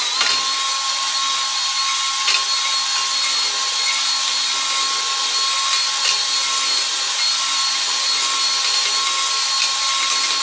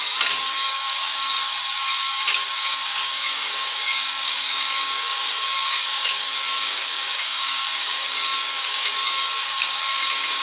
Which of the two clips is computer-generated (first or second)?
second